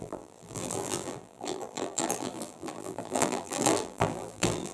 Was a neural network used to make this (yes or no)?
yes